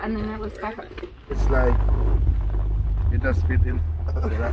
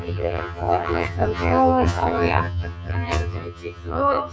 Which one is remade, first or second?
second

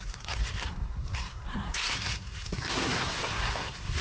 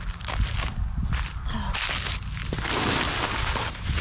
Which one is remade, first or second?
first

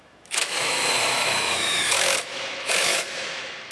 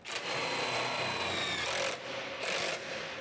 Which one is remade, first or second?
first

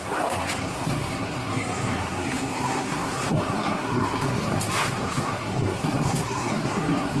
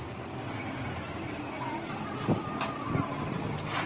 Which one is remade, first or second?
first